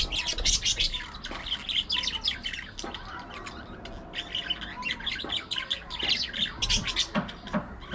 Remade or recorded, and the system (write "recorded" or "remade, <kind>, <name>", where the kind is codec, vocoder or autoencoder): recorded